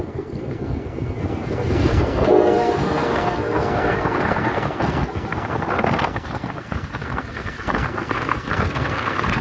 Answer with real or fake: fake